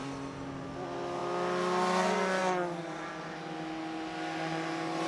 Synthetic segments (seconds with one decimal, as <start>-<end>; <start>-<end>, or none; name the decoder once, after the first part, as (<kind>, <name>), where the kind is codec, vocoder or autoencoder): none

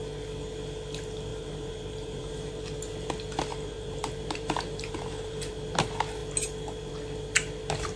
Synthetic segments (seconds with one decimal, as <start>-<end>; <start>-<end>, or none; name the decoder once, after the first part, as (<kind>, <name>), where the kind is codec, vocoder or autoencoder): 1.3-2.3 (vocoder, BigVGAN v2); 3.5-5.5

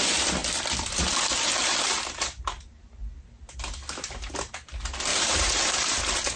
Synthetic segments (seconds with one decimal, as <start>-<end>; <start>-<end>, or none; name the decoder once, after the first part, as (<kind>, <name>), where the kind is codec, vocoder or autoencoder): 5.1-6.0 (vocoder, BigVGAN v2)

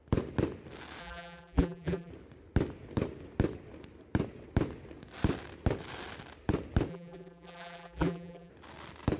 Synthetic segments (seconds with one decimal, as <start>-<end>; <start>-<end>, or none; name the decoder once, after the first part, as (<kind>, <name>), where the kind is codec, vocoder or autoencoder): 1.0-2.1 (vocoder, BigVGAN v2); 6.9-8.5

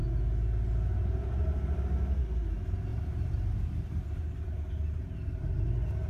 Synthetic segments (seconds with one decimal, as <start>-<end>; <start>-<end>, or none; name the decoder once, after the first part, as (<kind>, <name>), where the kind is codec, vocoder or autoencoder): 2.9-4.7 (vocoder, BigVGAN v2)